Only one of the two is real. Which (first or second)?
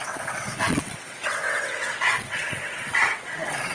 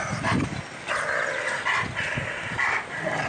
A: second